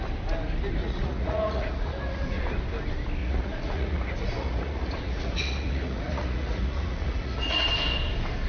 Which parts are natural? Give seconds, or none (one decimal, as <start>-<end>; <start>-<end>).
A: 0.0-0.8; 2.4-3.2; 7.7-8.5